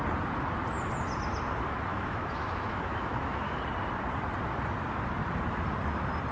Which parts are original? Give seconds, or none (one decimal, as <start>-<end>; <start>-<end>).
0.0-1.9; 3.6-6.3